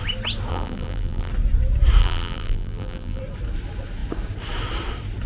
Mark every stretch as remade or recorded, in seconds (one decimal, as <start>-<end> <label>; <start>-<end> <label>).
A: 0.0-0.5 recorded; 0.5-1.3 remade; 1.3-2.0 recorded; 2.0-3.2 remade; 3.2-5.3 recorded